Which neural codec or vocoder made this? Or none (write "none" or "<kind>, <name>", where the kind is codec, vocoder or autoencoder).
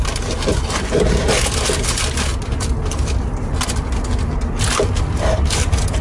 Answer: none